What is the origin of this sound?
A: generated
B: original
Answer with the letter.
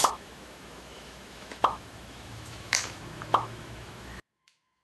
A